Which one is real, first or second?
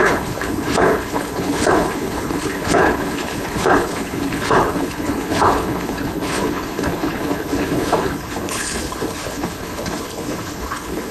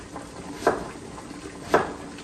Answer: second